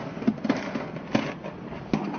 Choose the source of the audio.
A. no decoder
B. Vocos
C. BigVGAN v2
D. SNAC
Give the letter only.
A